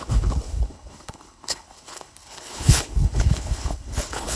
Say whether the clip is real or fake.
fake